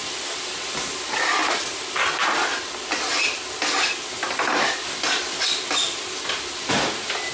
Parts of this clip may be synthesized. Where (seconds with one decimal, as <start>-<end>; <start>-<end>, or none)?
1.4-2.1